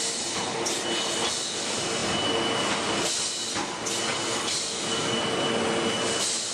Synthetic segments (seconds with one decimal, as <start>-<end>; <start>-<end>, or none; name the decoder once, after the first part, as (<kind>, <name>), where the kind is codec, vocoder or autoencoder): none